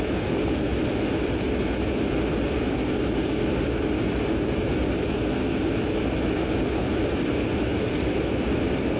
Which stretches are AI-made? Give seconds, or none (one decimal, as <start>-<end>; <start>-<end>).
none